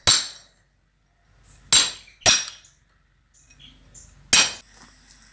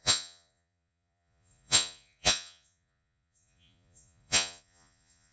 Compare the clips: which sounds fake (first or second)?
second